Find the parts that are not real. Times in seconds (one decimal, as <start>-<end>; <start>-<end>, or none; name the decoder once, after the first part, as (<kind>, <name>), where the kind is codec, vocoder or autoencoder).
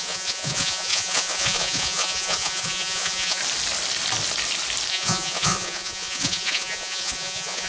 0.0-3.4 (vocoder, Vocos); 4.9-7.7